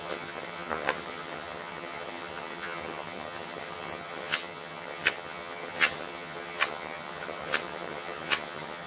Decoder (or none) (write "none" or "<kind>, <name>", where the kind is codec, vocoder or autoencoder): vocoder, HiFi-GAN